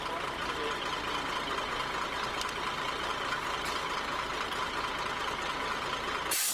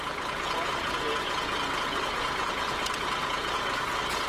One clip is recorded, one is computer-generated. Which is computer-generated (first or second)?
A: second